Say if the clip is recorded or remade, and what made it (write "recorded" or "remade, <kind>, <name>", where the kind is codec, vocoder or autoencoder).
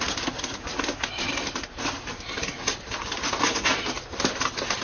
recorded